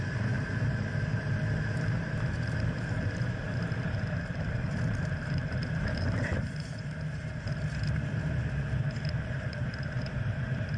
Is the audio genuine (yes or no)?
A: no